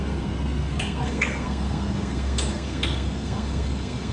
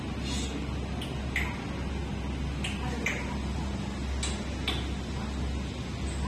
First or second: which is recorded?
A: second